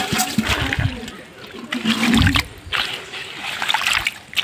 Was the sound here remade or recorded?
recorded